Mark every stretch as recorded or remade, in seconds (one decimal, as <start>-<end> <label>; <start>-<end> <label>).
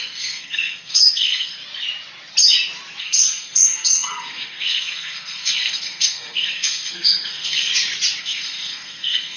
0.0-1.6 remade; 1.6-3.0 recorded; 3.0-7.7 remade; 7.7-8.2 recorded; 8.2-9.4 remade